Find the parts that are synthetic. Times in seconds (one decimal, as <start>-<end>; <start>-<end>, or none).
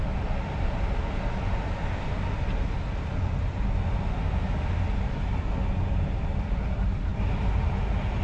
none